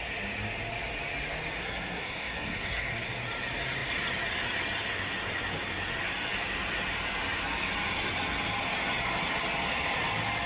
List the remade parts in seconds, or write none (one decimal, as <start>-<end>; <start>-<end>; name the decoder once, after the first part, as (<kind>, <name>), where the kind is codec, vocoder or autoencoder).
1.6-3.1 (codec, SNAC)